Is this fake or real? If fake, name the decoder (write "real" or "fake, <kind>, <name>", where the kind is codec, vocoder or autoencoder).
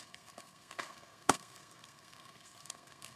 fake, codec, SNAC